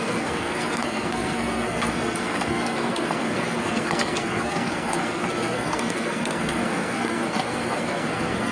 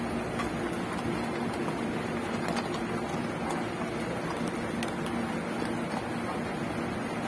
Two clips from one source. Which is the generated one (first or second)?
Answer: first